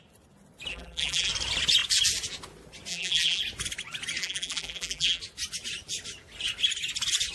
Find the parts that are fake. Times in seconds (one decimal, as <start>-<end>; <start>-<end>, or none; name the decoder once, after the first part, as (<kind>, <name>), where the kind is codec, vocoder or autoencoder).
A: 0.7-1.3 (vocoder, BigVGAN v2); 2.9-3.4; 4.2-5.2